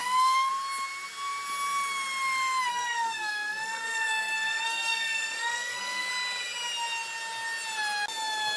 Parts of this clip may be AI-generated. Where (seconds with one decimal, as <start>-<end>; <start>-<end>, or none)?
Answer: 0.0-0.5; 2.7-6.1